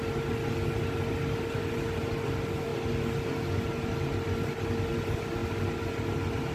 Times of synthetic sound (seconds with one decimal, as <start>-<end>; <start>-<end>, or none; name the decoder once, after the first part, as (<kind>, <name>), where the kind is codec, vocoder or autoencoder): none